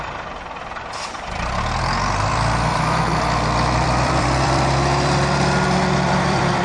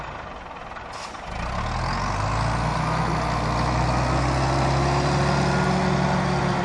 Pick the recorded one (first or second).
second